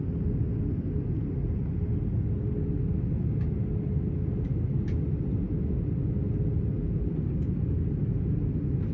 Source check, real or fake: real